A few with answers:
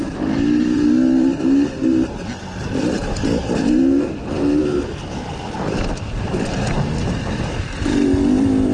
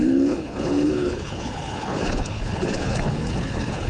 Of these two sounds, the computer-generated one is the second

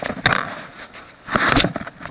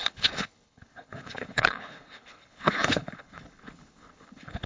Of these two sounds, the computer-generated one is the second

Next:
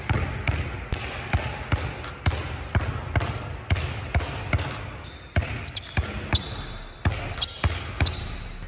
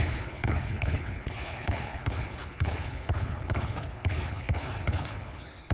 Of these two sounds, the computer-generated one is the second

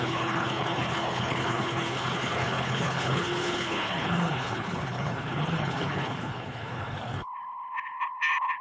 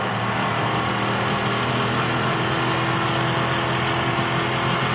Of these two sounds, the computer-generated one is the first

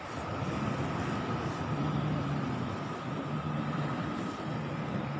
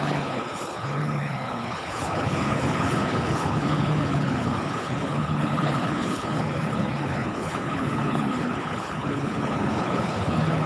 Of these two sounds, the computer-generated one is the second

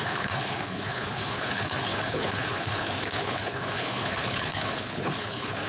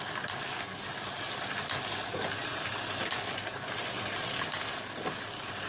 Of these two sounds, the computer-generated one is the first